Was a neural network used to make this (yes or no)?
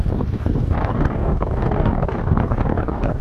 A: yes